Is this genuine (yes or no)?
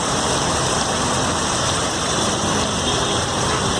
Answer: no